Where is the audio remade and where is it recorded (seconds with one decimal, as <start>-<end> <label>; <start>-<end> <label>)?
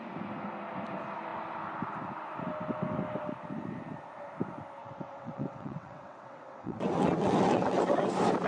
0.0-4.8 recorded; 4.8-7.8 remade; 7.8-8.5 recorded